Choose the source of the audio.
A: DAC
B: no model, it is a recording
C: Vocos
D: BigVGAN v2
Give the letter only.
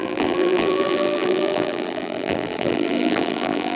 D